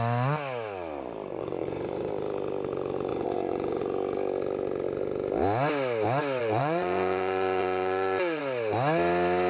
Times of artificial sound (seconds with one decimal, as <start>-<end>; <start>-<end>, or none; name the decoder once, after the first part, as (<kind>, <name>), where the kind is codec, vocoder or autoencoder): 1.3-2.1 (vocoder, Vocos); 3.1-3.8; 6.4-8.4